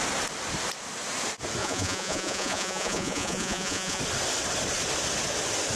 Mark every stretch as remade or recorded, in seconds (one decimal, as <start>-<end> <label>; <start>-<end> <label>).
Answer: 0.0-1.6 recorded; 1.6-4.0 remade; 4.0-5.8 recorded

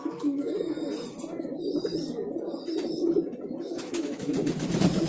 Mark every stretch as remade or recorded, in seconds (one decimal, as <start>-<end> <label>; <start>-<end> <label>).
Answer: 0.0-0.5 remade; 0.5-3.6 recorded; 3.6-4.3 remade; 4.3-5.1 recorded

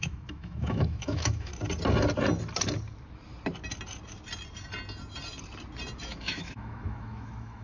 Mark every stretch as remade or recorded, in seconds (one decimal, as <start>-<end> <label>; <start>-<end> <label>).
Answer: 0.0-1.5 remade; 1.5-6.0 recorded; 6.0-7.6 remade